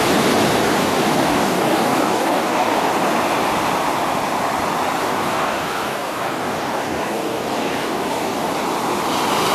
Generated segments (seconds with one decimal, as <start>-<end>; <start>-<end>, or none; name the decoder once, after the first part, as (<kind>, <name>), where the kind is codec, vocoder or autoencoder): 0.8-2.9 (codec, DAC); 5.0-8.5